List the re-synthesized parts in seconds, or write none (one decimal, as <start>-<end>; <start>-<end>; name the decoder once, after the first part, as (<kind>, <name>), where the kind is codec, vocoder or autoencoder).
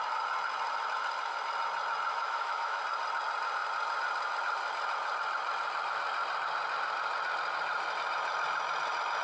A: 2.1-2.8 (autoencoder, DAC-VAE)